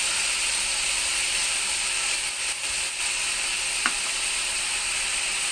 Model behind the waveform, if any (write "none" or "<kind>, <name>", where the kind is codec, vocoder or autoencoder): none